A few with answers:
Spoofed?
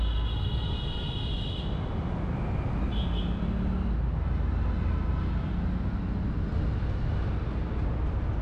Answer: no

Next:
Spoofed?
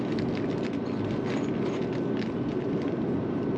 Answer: no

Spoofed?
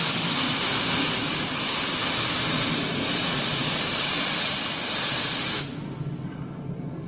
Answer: no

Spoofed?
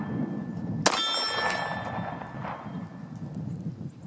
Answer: no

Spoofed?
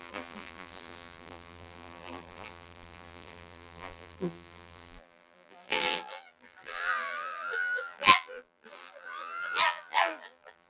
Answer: yes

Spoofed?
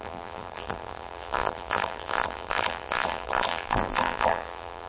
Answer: yes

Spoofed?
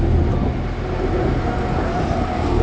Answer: no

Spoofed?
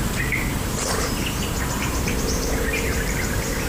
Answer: yes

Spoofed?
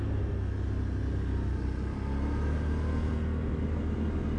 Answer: no